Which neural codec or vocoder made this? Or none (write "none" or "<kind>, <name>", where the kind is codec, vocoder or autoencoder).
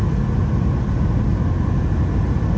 none